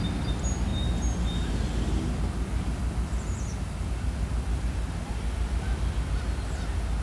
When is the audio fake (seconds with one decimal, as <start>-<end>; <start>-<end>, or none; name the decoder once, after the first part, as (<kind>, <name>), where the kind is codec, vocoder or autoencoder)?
none